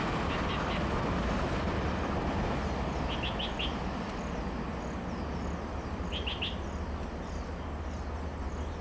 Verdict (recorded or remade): recorded